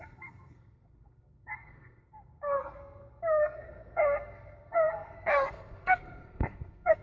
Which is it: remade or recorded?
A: remade